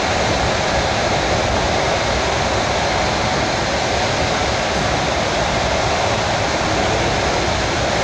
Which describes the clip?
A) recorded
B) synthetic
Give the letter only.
A